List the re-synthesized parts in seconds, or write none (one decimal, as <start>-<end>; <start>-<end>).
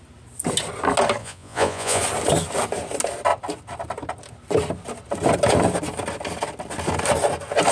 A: 1.2-2.0